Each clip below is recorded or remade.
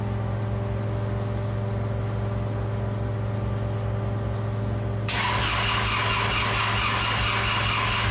recorded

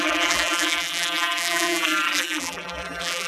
remade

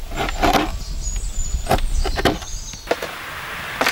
recorded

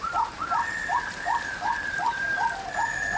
recorded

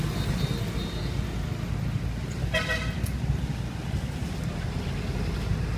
recorded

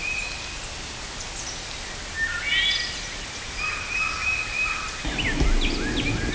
recorded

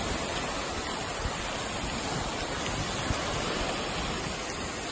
recorded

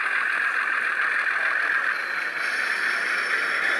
recorded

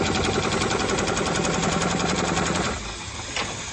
recorded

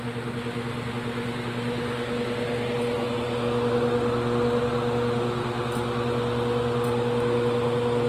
recorded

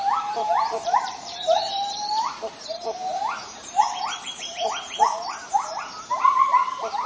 remade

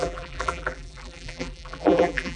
remade